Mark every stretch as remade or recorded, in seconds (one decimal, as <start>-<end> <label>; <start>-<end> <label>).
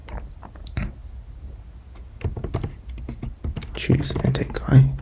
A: 0.0-5.0 recorded